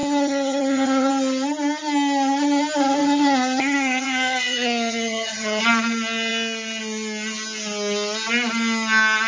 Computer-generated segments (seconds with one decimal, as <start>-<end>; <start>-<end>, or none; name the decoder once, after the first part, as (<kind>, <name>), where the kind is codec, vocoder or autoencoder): 0.0-1.1 (vocoder, HiFi-GAN); 3.0-5.6